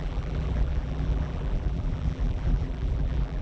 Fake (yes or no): yes